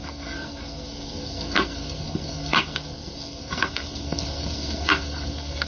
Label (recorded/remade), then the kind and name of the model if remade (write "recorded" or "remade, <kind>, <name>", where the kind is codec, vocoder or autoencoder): remade, codec, SNAC